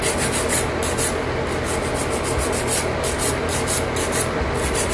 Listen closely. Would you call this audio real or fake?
real